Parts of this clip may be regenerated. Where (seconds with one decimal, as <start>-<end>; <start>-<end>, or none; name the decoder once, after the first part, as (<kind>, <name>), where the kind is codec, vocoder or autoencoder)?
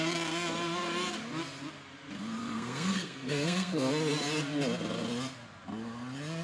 2.4-3.9 (codec, SNAC)